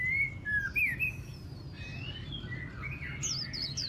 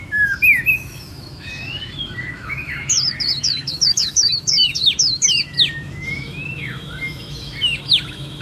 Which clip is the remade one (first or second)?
second